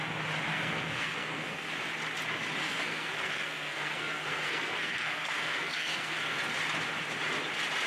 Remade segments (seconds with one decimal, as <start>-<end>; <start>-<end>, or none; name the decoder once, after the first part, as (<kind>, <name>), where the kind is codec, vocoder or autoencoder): 0.5-1.7 (codec, SNAC); 2.6-6.4